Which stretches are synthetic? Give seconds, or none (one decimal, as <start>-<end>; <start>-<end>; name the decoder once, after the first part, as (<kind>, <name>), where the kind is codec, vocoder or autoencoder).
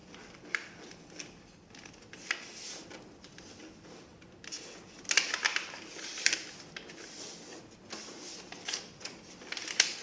none